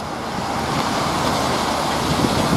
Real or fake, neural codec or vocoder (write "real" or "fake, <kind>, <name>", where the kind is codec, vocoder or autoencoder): real